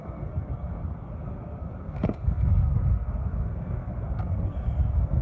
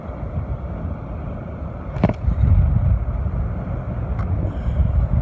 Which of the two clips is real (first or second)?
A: second